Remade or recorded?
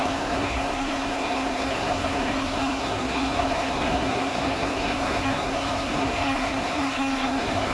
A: remade